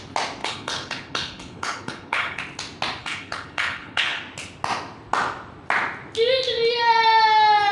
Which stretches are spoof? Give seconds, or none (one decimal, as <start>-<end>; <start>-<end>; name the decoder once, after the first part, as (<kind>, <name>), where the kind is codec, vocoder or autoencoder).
0.4-2.4 (codec, HILCodec); 3.0-4.2